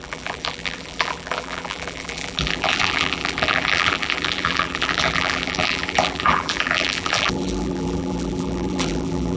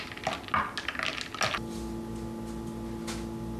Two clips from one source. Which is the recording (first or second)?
second